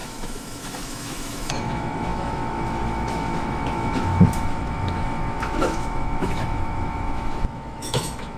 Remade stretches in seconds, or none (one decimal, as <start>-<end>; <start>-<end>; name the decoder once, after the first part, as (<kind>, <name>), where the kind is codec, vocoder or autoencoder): 0.0-8.4 (autoencoder, DAC-VAE)